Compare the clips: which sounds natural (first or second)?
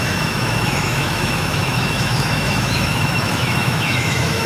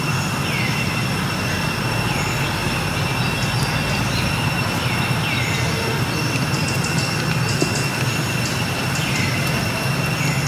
second